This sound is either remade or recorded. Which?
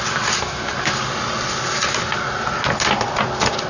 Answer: recorded